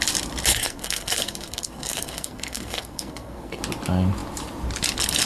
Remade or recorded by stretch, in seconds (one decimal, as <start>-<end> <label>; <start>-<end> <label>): 0.0-0.5 recorded; 0.5-3.6 remade; 3.6-5.3 recorded